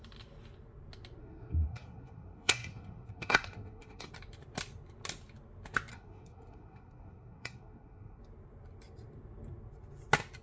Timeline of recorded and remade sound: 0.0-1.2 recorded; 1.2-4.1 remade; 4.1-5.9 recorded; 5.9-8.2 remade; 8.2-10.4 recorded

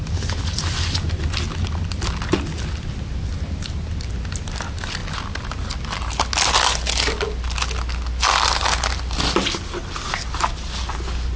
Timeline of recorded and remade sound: 0.0-11.4 recorded

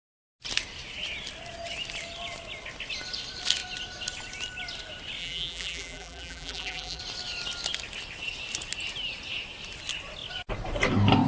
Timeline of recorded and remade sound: 0.0-5.2 recorded; 5.2-7.0 remade; 7.0-11.3 recorded

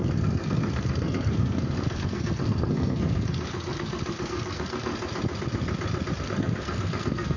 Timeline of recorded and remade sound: 0.0-4.9 remade; 4.9-6.2 recorded; 6.2-7.4 remade

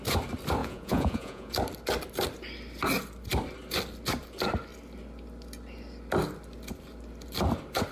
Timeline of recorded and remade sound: 0.0-0.6 recorded; 0.6-1.5 remade; 1.5-7.9 recorded

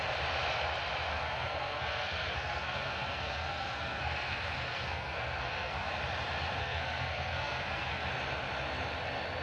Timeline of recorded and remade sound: 0.0-1.1 recorded; 1.1-5.9 remade; 5.9-6.6 recorded; 6.6-8.1 remade; 8.1-9.4 recorded

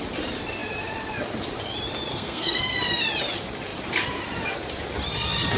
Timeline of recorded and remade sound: 0.0-2.1 recorded; 2.1-2.6 remade; 2.6-5.6 recorded